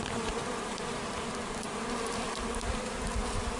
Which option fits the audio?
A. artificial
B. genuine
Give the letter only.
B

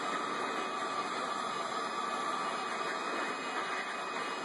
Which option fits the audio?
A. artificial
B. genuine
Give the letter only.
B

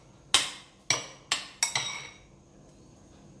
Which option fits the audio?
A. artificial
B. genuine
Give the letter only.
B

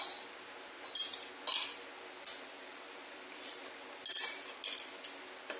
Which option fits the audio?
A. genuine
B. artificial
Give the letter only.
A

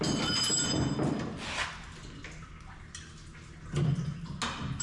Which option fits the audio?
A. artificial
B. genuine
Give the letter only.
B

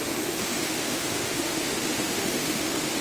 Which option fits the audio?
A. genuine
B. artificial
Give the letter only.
B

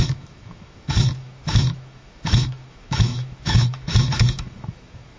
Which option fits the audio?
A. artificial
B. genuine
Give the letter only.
A